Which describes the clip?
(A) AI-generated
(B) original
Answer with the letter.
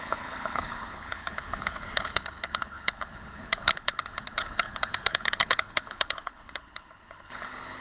A